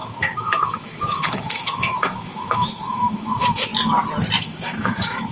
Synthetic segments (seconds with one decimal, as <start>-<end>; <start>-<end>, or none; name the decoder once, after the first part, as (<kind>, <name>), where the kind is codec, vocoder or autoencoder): 0.0-3.7 (autoencoder, DAC-VAE); 4.4-5.3